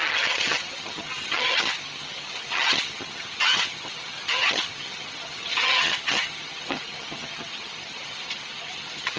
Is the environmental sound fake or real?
fake